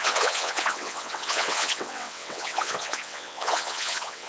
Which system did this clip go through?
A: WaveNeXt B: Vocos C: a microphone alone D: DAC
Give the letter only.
A